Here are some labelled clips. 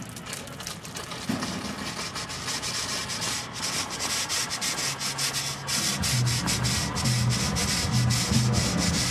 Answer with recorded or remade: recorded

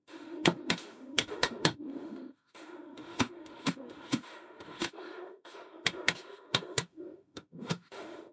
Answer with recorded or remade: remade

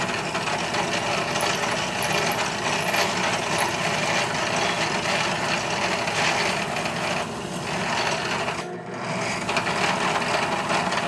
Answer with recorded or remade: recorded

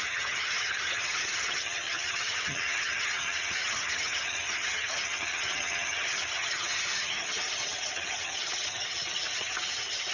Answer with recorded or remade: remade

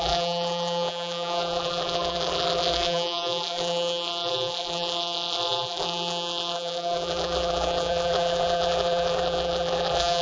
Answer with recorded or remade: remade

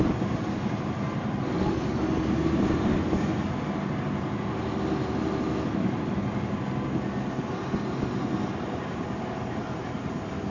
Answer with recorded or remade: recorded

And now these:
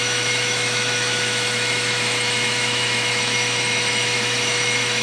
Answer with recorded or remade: remade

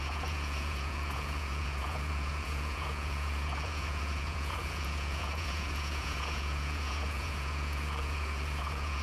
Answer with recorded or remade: remade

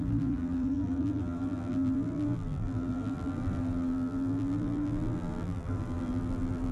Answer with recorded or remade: remade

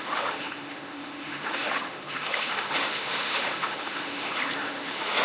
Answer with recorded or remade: remade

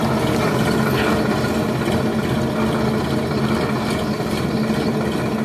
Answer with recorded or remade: recorded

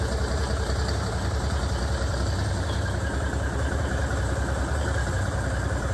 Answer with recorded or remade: remade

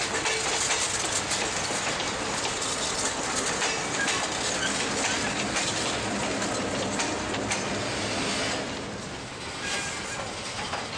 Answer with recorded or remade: recorded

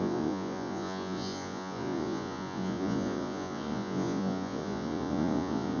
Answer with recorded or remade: remade